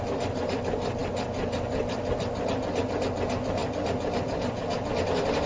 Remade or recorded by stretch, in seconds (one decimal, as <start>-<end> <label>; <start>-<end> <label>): 0.0-5.5 recorded